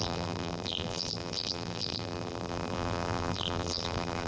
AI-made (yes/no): yes